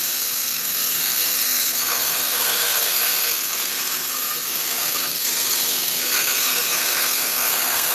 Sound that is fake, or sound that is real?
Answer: fake